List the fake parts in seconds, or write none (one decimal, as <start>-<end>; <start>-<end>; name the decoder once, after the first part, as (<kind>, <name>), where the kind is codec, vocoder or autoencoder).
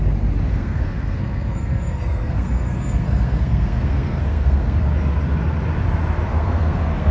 0.5-4.8 (codec, SNAC); 6.3-7.1